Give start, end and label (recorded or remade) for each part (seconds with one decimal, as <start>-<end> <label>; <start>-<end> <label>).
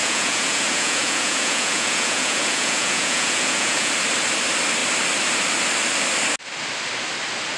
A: 0.0-3.9 remade; 3.9-7.6 recorded